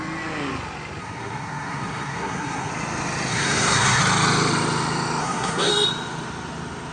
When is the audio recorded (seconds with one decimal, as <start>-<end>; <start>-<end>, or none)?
0.0-1.0; 2.7-3.3; 4.0-5.2; 5.7-6.9